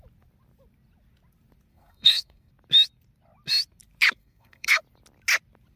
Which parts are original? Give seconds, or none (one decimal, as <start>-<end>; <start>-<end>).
0.0-1.7; 2.5-4.2; 4.8-5.8